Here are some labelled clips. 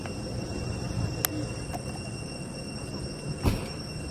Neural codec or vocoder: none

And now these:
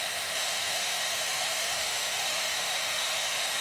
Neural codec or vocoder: autoencoder, DAC-VAE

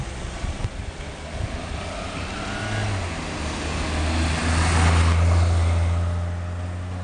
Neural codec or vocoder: none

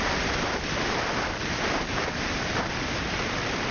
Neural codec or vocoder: vocoder, BigVGAN v2